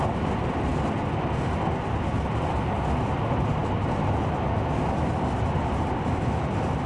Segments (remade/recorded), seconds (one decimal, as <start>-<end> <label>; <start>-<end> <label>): 0.0-6.9 recorded